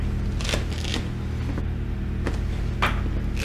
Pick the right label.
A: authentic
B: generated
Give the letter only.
A